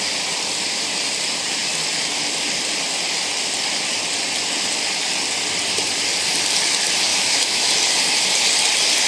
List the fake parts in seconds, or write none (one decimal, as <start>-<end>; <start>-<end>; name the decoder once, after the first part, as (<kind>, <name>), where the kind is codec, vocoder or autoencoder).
7.1-7.7 (autoencoder, DAC-VAE)